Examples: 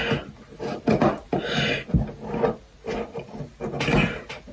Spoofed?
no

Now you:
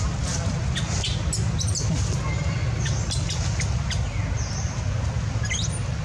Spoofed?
no